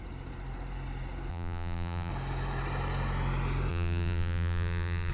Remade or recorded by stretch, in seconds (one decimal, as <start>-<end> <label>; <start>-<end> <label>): 0.0-1.3 recorded; 1.3-2.1 remade; 2.1-3.7 recorded; 3.7-5.1 remade